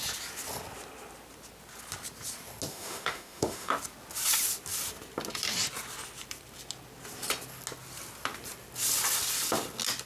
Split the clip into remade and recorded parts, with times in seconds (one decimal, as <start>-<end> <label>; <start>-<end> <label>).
0.0-2.7 recorded; 2.7-3.7 remade; 3.7-10.1 recorded